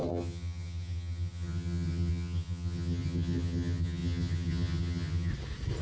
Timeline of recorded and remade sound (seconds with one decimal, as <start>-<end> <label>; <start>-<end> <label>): 0.0-5.3 remade; 5.3-5.8 recorded